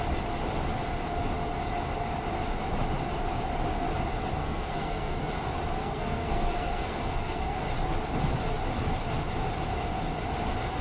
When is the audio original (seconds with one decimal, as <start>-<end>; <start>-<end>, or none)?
0.0-4.4; 5.3-5.8; 7.6-10.8